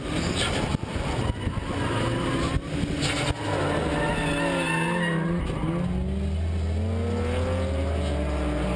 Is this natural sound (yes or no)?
yes